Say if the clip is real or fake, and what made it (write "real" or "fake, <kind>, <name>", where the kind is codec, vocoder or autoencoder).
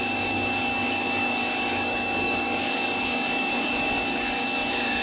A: fake, codec, DAC